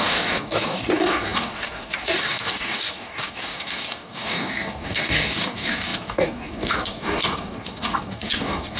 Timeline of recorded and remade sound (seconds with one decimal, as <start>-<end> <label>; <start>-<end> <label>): 0.0-8.8 remade